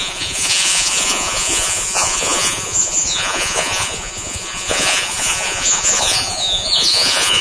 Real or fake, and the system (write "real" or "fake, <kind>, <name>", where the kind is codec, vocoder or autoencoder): fake, vocoder, Vocos